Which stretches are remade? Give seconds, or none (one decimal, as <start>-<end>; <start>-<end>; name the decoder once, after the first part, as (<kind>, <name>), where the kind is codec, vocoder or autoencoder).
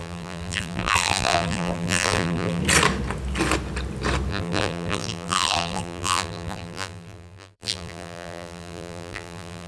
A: 0.0-2.6 (vocoder, BigVGAN v2); 4.3-9.7